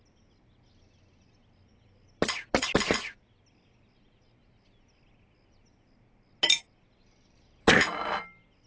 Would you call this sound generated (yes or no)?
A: no